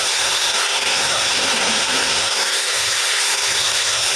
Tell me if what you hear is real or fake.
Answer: fake